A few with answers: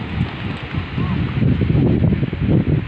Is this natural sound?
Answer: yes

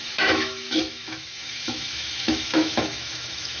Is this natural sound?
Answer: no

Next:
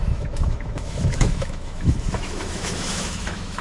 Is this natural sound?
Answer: no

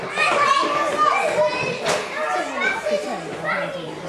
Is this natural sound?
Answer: yes